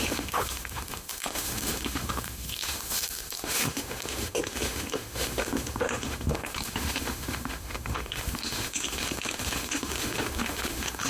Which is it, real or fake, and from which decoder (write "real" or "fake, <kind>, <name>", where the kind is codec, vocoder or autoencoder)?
fake, autoencoder, DAC-VAE